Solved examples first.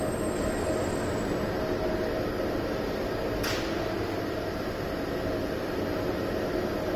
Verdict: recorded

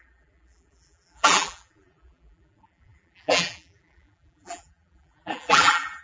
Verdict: remade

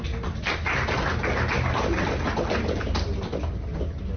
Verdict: recorded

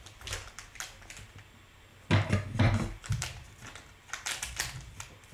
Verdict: recorded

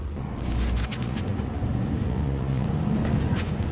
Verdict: remade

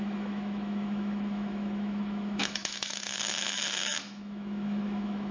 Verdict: remade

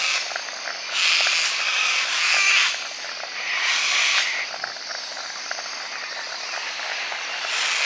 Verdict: recorded